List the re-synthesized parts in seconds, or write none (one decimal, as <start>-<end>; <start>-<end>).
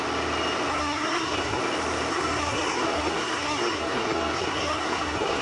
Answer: 0.7-1.6; 2.1-5.4